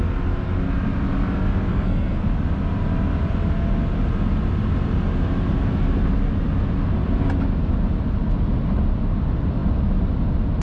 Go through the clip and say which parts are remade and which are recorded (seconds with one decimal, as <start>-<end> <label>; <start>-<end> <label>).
0.0-1.7 recorded; 1.7-2.2 remade; 2.2-10.6 recorded